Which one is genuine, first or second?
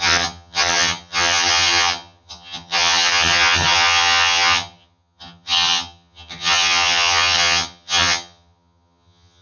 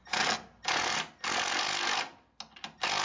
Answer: second